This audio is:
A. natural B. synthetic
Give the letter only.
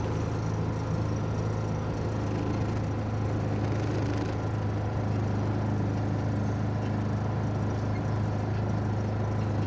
A